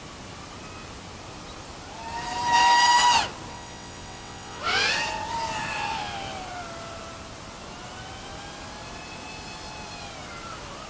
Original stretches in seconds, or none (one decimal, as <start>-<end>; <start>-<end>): 0.0-3.5; 4.6-10.9

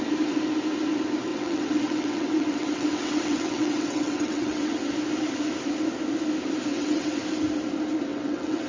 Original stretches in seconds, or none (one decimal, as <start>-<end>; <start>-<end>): 0.0-1.3; 4.7-6.7; 7.2-8.1